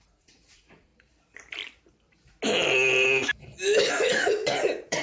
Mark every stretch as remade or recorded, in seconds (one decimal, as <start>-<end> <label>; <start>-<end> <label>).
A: 0.0-0.9 remade; 0.9-3.9 recorded; 3.9-5.0 remade